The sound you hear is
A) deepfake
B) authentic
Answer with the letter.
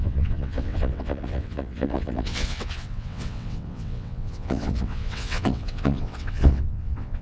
A